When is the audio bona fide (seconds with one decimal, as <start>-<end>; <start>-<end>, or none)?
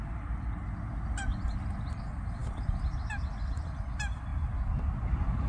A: 0.0-5.5